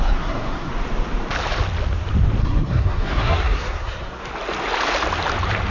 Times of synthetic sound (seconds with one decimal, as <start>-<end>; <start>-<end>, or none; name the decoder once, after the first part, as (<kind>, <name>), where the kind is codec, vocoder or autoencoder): 0.0-0.7 (codec, SNAC); 2.4-4.3